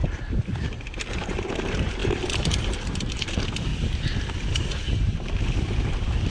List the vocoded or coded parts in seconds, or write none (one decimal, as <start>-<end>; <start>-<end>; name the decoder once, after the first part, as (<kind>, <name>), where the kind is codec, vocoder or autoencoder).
1.2-3.7 (vocoder, BigVGAN v2); 5.4-6.3